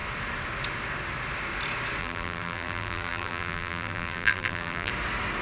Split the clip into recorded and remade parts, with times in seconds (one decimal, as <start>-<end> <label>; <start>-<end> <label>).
0.0-2.0 recorded; 2.0-4.9 remade; 4.9-5.4 recorded